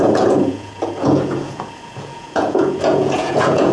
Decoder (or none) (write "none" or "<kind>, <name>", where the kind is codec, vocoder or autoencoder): vocoder, Vocos